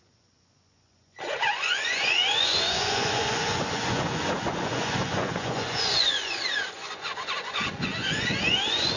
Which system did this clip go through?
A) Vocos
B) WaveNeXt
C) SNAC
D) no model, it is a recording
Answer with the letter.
A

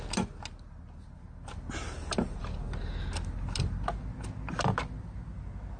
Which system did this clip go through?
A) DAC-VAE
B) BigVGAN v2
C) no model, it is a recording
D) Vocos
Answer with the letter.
C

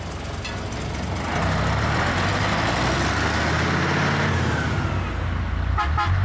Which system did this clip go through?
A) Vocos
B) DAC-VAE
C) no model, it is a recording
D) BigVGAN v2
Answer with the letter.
C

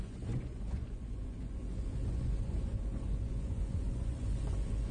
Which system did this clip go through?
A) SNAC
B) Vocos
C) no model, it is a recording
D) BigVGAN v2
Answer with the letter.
B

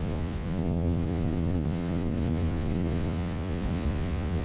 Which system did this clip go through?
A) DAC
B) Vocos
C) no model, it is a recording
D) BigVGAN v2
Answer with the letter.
B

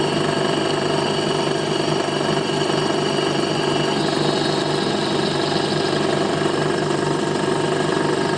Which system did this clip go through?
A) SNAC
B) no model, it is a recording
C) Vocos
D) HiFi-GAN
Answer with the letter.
B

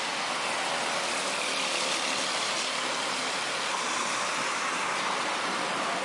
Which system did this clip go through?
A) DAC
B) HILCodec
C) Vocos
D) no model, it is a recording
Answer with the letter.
D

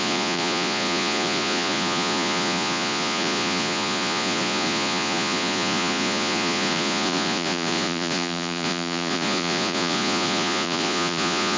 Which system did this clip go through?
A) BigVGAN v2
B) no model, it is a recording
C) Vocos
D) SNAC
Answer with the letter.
C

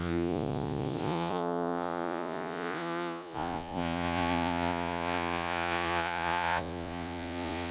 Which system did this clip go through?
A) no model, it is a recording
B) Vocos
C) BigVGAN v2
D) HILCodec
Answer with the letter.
B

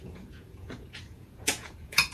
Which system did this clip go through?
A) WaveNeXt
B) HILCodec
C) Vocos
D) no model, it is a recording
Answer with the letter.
C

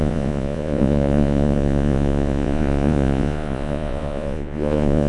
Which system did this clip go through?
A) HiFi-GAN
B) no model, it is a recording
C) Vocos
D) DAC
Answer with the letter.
C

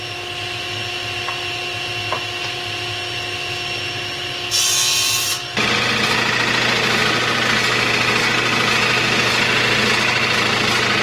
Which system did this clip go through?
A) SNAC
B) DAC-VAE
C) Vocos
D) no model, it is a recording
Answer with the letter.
D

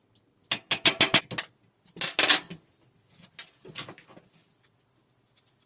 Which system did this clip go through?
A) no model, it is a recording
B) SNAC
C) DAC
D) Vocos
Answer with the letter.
A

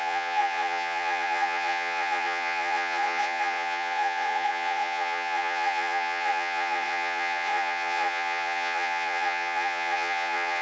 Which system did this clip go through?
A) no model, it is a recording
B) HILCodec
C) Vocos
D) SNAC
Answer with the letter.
C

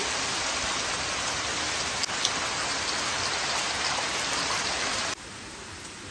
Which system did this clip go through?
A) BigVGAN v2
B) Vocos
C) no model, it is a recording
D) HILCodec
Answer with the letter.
C